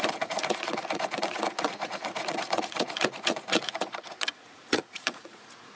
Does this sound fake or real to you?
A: fake